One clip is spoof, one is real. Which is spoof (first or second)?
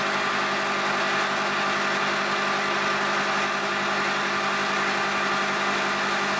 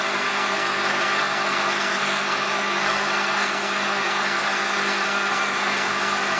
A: second